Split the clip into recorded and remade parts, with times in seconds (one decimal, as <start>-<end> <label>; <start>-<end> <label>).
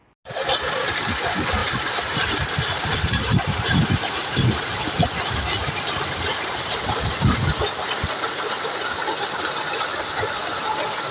0.0-1.6 recorded; 1.6-4.6 remade; 4.6-5.6 recorded; 5.6-7.4 remade; 7.4-11.1 recorded